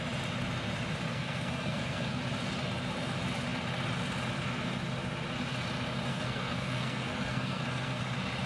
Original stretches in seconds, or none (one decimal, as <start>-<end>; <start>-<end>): 0.0-1.1; 2.2-6.1; 8.0-8.5